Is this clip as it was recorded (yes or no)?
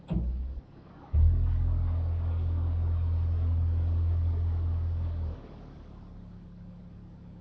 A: no